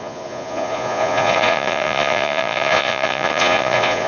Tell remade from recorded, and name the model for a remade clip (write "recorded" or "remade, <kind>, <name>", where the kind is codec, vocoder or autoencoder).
remade, vocoder, Vocos